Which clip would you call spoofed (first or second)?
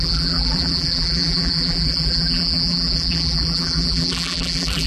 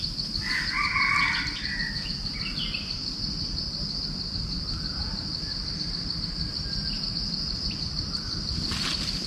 first